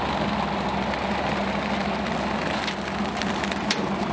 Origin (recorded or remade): recorded